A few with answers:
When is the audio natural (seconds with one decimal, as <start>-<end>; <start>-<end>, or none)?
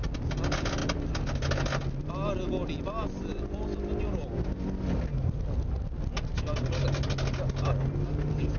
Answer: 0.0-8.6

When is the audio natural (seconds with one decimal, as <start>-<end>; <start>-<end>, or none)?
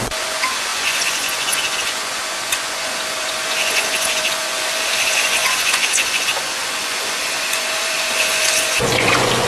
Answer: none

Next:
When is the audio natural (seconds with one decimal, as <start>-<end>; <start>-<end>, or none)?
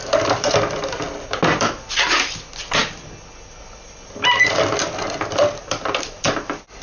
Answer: 2.8-4.5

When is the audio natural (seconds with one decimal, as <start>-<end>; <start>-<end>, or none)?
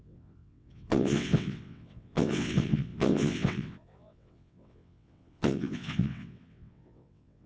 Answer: none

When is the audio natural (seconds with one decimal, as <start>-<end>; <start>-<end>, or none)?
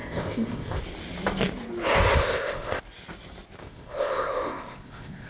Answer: 0.8-2.2; 2.8-3.6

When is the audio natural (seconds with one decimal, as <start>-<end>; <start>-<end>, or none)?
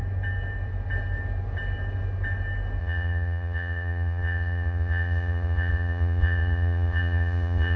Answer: 0.0-2.8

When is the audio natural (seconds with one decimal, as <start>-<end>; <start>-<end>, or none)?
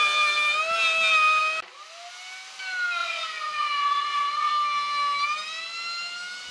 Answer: 0.0-3.0; 4.5-6.5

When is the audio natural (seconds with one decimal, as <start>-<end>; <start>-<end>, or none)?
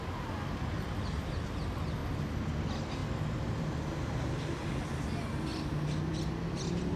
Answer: 0.0-7.0